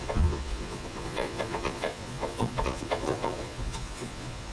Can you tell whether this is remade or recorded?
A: remade